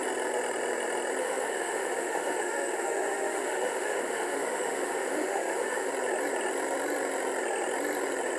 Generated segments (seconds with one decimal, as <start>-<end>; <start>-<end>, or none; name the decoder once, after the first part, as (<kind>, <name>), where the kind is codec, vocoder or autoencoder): 1.2-5.9 (autoencoder, DAC-VAE)